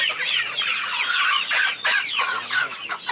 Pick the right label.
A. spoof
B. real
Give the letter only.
A